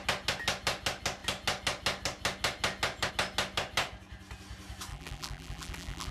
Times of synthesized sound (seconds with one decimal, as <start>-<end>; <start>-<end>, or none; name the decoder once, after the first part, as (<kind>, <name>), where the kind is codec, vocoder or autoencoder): 4.9-6.1 (vocoder, BigVGAN v2)